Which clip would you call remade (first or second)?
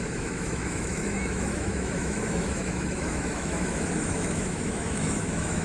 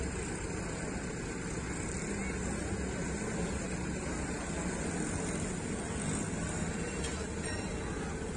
first